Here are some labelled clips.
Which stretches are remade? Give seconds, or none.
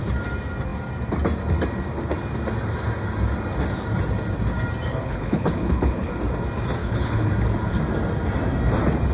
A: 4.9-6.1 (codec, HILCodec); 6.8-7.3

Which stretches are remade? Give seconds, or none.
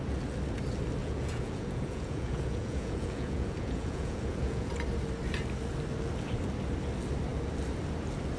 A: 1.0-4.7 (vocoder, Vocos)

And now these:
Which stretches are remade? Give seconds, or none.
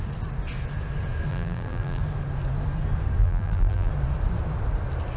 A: 1.3-2.0 (vocoder, BigVGAN v2); 3.2-3.9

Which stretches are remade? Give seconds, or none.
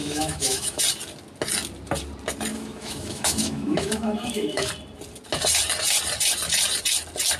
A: 0.0-0.8 (autoencoder, DAC-VAE); 2.5-4.7